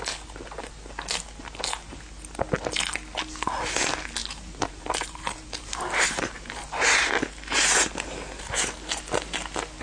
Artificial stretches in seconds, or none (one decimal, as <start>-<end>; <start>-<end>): 4.2-6.5